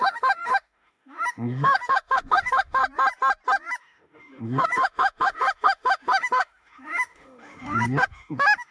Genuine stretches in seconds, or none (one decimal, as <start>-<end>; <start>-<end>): 2.8-3.8